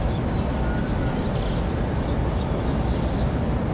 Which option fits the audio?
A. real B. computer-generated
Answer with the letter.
A